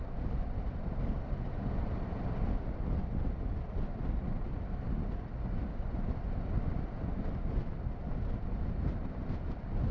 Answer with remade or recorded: recorded